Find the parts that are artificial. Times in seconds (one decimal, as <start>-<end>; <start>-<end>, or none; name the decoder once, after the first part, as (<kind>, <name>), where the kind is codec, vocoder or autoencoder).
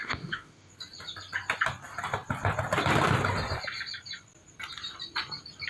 0.0-0.7 (autoencoder, DAC-VAE)